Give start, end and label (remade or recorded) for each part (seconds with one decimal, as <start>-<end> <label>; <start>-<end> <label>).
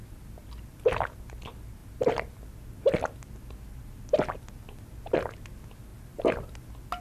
0.0-7.0 recorded